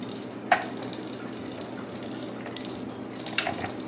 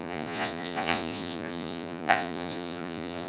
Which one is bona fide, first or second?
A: first